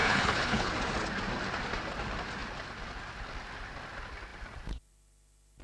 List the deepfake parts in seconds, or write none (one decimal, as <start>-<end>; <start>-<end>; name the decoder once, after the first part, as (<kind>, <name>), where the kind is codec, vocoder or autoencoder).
0.0-0.7 (codec, HILCodec)